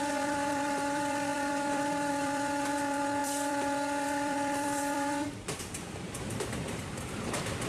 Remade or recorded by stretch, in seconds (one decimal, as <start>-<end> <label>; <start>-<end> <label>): 0.0-7.7 remade